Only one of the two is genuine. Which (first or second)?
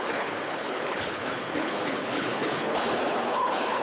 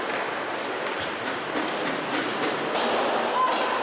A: second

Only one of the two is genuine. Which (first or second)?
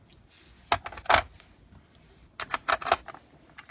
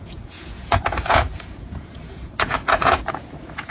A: first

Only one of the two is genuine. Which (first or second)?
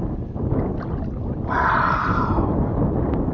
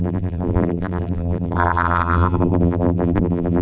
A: first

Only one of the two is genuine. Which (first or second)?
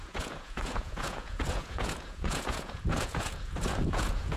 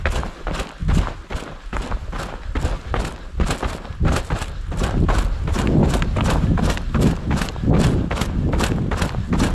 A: second